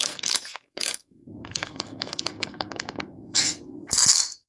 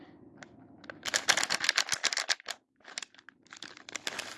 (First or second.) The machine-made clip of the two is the first